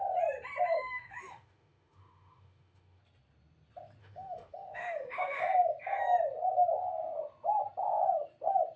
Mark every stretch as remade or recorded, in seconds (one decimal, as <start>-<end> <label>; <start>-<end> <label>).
0.0-0.7 recorded; 0.7-3.0 remade; 3.0-4.0 recorded; 4.0-5.4 remade; 5.4-8.8 recorded